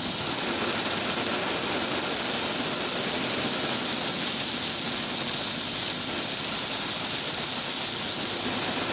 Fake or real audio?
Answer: real